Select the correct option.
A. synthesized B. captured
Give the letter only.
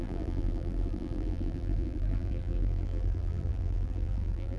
A